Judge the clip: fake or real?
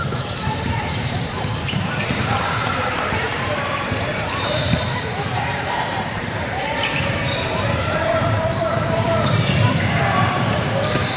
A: fake